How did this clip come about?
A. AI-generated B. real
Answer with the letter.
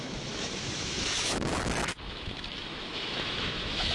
A